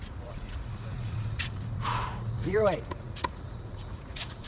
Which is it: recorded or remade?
remade